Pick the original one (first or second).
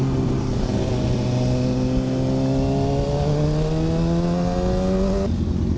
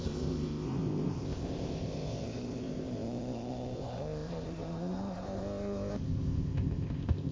first